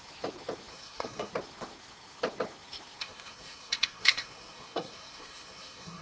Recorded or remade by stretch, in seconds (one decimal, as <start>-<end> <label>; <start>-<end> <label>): 0.0-0.7 recorded; 0.7-1.3 remade; 1.3-3.0 recorded; 3.0-6.0 remade